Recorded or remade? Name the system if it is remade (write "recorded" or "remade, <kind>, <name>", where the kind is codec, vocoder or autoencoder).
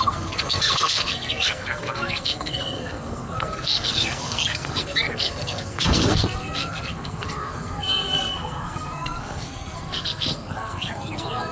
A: remade, codec, SNAC